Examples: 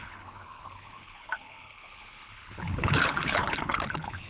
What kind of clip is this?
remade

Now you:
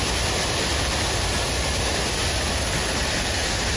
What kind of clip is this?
recorded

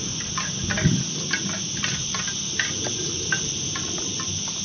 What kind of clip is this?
recorded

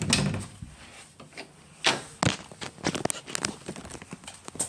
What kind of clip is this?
recorded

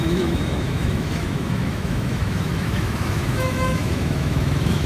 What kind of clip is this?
remade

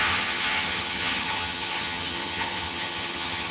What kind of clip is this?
remade